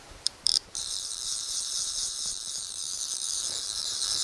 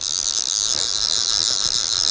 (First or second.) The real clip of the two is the second